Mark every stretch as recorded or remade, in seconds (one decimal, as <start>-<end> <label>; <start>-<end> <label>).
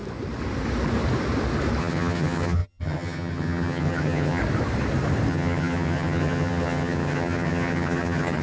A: 0.0-1.8 recorded; 1.8-4.4 remade; 4.4-5.3 recorded; 5.3-8.4 remade